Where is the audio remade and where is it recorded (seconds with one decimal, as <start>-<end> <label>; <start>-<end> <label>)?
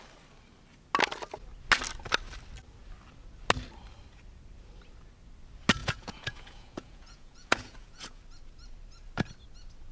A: 0.0-5.8 recorded; 5.8-8.2 remade; 8.2-9.9 recorded